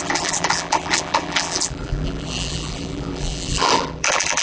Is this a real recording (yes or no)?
no